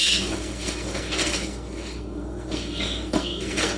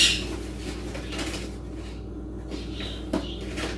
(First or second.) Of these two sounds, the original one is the second